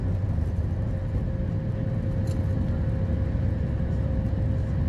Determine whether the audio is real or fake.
real